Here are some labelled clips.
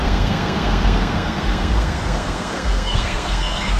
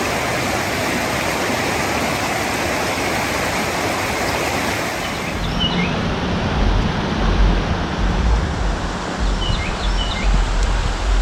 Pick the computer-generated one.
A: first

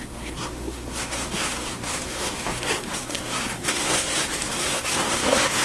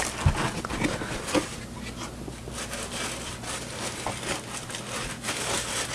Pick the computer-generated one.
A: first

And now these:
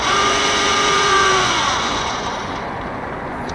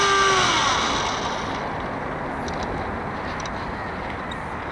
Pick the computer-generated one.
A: first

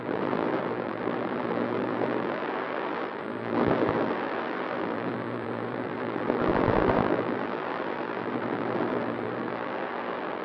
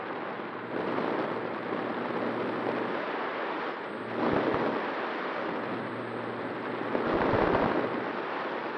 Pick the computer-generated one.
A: first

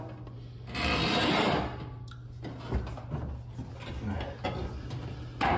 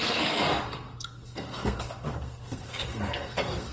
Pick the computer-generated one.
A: second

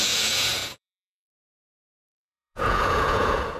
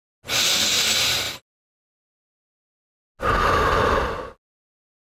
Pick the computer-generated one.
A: first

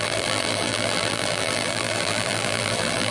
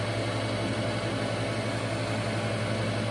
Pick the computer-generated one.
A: first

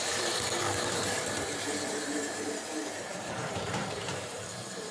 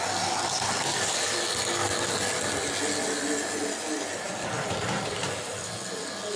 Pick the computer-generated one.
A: first